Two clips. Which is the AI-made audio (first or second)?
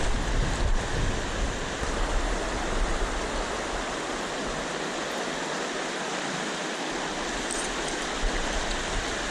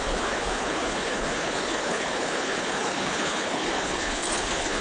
second